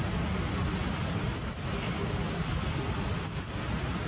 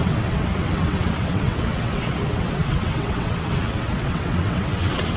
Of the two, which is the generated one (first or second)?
second